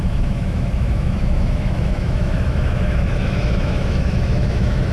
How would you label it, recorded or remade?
remade